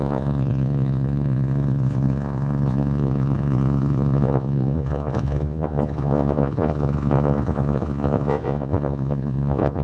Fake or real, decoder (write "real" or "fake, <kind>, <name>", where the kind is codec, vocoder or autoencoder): fake, vocoder, Vocos